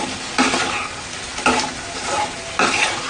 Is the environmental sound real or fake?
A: real